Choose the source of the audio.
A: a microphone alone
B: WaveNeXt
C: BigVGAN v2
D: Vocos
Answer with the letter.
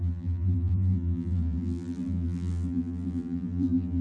C